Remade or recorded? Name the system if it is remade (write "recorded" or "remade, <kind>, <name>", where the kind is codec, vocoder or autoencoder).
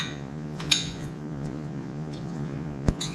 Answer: remade, vocoder, Vocos